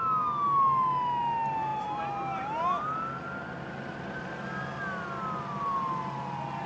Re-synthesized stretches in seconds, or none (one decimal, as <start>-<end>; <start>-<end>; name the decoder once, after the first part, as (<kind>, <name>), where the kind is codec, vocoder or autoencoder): none